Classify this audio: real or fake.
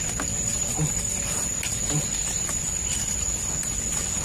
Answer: real